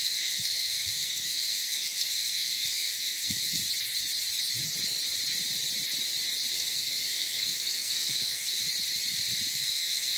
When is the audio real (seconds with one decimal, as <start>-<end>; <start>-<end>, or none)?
3.6-6.5; 8.6-9.5